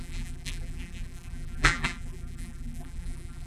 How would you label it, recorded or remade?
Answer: remade